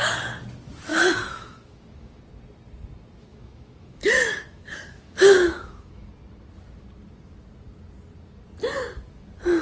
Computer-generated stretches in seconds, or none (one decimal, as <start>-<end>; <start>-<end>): 0.9-2.2; 3.3-6.1